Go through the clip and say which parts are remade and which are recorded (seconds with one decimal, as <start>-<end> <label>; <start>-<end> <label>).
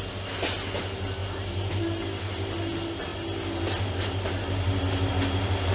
0.0-5.7 recorded